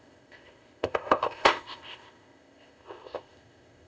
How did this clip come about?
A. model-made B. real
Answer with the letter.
A